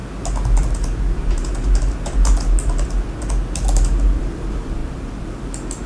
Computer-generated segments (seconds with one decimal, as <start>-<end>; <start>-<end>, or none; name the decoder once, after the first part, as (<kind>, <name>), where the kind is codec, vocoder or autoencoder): none